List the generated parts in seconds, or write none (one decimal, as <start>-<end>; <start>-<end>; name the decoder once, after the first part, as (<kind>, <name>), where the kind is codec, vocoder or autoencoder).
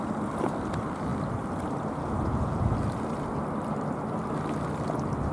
none